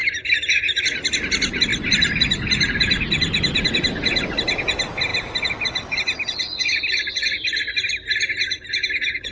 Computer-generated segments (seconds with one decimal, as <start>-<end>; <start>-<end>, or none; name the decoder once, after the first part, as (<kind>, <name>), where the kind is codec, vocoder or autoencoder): none